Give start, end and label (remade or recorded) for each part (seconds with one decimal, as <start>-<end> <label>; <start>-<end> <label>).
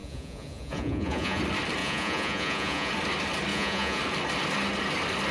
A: 0.0-1.4 remade; 1.4-1.8 recorded; 1.8-2.9 remade; 2.9-3.5 recorded; 3.5-4.0 remade; 4.0-5.3 recorded